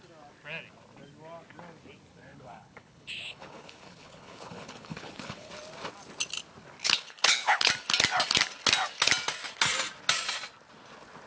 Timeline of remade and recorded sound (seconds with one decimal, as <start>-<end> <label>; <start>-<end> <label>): 0.0-2.1 recorded; 2.1-5.5 remade; 5.5-6.8 recorded; 6.8-7.7 remade; 7.7-11.3 recorded